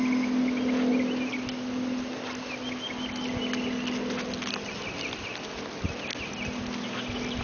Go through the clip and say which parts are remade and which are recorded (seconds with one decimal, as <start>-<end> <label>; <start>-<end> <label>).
0.0-7.4 recorded